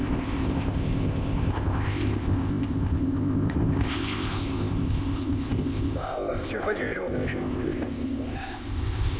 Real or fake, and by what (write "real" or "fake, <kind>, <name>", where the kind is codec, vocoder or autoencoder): fake, codec, ZipCodec